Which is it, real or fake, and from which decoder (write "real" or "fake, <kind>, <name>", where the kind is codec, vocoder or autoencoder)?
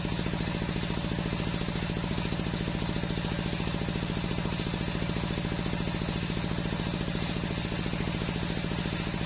real